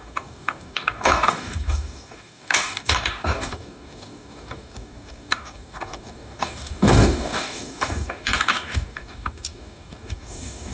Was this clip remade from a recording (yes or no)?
yes